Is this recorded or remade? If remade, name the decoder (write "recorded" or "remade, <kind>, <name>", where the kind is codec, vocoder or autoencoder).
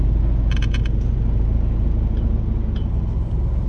recorded